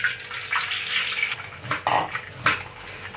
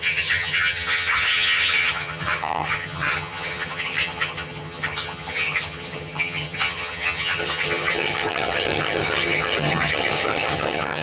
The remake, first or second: second